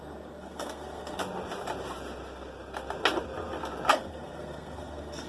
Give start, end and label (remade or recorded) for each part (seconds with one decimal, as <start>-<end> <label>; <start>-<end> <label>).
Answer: 0.0-1.2 remade; 1.2-3.9 recorded; 3.9-5.3 remade